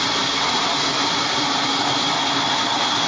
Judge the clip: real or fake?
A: real